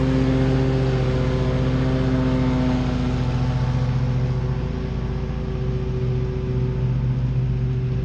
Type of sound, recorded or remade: recorded